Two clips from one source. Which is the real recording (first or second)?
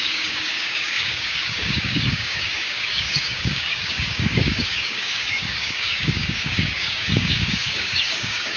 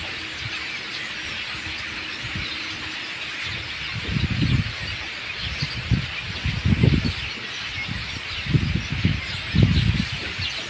second